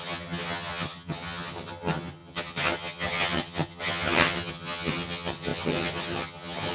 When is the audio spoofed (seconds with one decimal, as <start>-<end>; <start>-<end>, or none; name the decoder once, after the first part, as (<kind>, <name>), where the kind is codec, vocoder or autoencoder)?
0.0-6.7 (vocoder, HiFi-GAN)